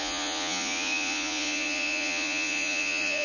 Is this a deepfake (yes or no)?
yes